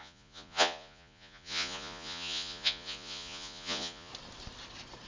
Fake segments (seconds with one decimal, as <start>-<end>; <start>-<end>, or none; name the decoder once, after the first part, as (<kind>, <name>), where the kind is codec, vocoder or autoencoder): 0.0-4.1 (vocoder, Vocos)